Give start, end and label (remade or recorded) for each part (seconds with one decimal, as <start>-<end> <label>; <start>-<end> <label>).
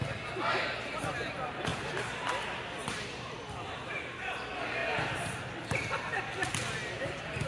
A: 0.0-1.7 recorded; 1.7-4.3 remade; 4.3-4.8 recorded; 4.8-6.2 remade; 6.2-6.8 recorded; 6.8-7.5 remade